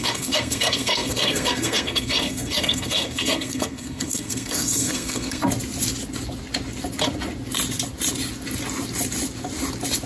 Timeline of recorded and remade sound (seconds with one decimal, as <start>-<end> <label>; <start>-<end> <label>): 0.0-5.4 remade; 5.4-10.1 recorded